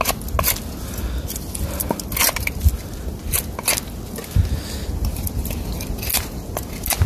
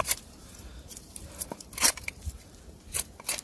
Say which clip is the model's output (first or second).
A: second